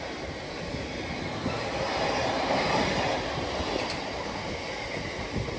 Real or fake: real